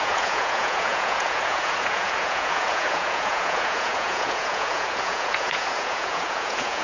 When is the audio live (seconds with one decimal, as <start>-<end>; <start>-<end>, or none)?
none